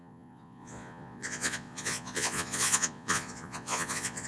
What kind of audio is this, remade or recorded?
remade